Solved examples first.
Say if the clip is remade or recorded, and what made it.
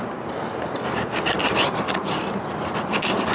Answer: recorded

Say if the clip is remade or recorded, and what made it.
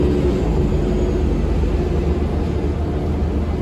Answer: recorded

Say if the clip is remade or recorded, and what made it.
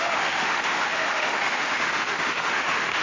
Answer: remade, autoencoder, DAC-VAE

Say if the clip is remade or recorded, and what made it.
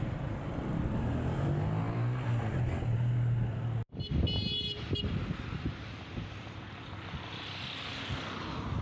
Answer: recorded